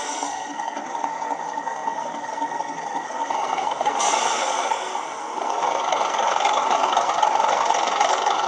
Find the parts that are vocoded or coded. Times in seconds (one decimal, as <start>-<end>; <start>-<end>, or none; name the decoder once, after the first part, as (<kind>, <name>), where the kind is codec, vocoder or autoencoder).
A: 0.0-8.5 (codec, SNAC)